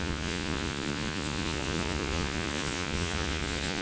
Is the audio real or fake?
fake